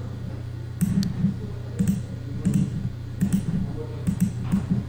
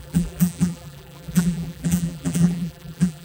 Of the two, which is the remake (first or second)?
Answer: second